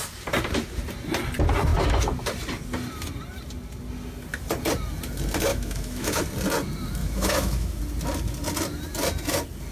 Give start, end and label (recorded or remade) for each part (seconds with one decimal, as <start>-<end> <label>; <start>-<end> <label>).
0.0-5.5 recorded; 5.5-6.2 remade; 6.2-7.0 recorded; 7.0-7.8 remade; 7.8-9.7 recorded